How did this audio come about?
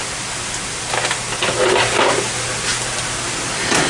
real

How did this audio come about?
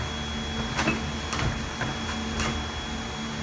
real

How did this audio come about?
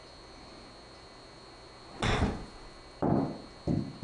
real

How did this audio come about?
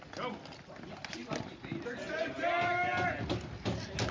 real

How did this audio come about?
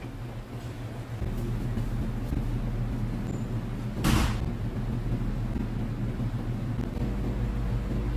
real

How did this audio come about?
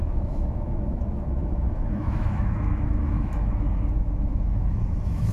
fake